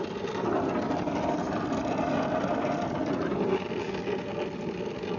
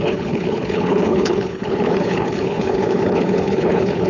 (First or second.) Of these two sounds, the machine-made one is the second